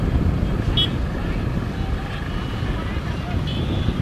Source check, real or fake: real